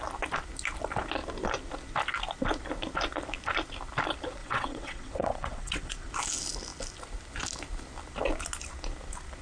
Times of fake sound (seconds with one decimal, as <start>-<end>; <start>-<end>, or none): 4.4-6.1